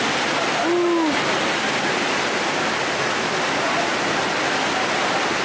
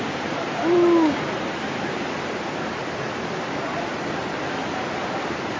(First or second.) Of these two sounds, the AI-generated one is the second